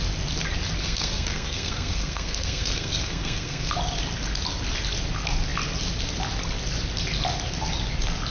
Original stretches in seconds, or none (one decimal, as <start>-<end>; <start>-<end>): 0.0-0.8; 3.7-8.3